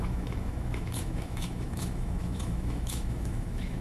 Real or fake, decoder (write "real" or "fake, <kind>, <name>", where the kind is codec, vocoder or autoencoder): fake, autoencoder, DAC-VAE